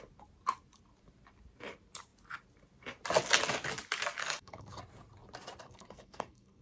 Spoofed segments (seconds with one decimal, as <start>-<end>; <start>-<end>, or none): 4.2-4.8; 5.6-6.6